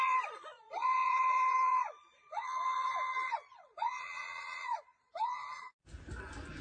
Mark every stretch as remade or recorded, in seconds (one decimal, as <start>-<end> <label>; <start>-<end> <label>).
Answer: 0.0-5.8 remade; 5.8-6.6 recorded